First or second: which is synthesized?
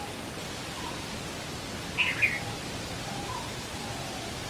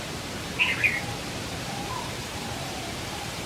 second